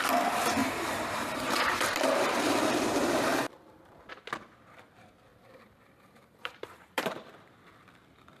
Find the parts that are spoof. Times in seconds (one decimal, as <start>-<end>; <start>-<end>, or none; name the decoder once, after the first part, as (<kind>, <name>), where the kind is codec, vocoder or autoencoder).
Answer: 0.6-4.1 (vocoder, BigVGAN v2); 5.3-7.3